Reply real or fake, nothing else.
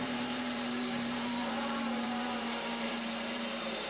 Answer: fake